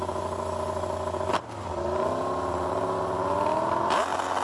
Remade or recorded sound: recorded